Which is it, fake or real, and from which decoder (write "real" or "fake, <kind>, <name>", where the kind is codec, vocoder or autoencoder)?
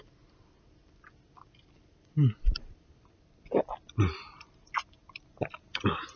real